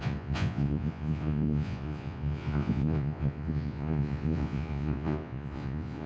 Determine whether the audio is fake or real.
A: fake